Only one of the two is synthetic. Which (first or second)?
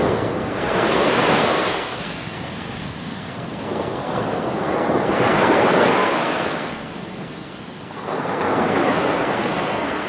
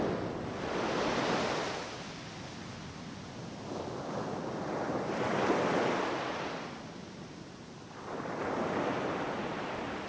first